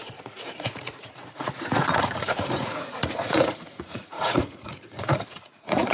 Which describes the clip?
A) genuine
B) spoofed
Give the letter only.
B